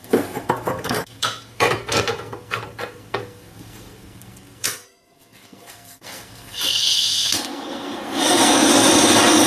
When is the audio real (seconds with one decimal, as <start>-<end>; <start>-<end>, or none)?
8.7-9.5